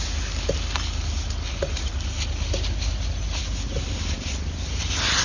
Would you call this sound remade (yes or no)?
no